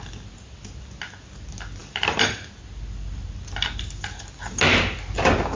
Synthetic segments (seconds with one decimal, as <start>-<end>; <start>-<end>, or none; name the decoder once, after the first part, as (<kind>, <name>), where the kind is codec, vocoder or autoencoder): none